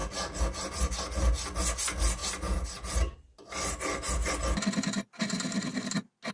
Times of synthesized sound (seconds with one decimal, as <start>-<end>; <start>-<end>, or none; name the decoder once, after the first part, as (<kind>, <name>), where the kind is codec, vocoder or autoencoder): none